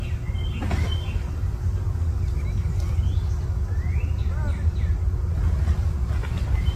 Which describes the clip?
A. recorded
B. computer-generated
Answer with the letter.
A